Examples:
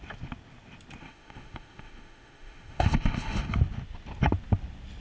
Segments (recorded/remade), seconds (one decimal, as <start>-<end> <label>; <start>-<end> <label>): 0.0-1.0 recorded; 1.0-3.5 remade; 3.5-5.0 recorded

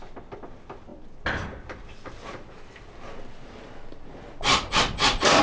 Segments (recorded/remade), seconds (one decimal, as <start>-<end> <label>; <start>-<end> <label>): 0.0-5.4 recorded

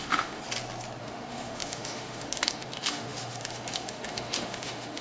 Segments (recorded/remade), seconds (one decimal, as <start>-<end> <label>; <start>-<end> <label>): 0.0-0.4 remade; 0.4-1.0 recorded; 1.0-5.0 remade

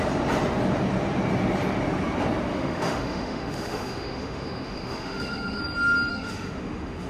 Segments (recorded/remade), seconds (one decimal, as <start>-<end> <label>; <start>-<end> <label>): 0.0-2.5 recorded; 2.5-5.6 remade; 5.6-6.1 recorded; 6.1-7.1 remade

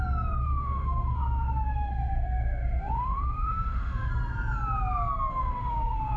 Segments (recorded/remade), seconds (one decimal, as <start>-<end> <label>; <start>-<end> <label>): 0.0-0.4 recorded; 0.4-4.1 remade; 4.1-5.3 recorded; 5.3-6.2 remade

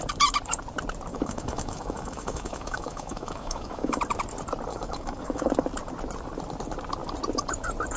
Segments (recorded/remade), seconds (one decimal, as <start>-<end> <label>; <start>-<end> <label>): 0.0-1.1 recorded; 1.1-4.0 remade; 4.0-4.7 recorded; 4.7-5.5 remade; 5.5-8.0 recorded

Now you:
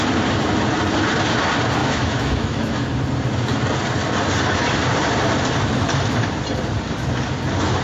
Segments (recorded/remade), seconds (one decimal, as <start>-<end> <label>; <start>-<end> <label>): 0.0-1.8 recorded; 1.8-2.7 remade; 2.7-7.8 recorded